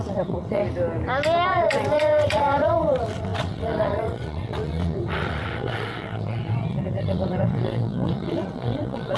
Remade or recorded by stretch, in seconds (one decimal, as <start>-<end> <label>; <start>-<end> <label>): 0.0-0.6 remade; 0.6-1.5 recorded; 1.5-9.2 remade